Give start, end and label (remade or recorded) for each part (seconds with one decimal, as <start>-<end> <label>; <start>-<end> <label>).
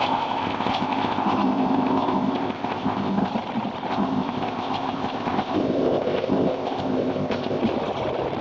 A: 0.0-3.3 remade; 3.3-3.9 recorded; 3.9-7.6 remade; 7.6-8.4 recorded